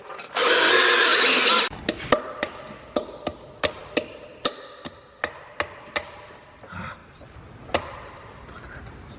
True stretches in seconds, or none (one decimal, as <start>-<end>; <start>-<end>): 0.0-9.2